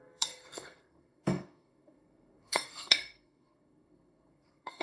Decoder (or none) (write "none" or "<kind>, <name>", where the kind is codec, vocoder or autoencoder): codec, SNAC